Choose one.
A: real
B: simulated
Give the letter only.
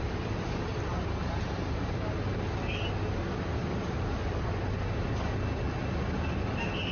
A